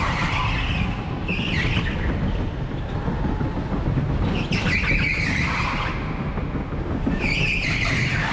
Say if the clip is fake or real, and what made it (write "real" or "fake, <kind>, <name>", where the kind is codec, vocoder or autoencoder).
real